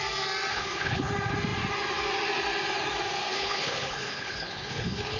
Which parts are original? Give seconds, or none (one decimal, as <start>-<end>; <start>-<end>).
0.0-0.5; 1.1-3.3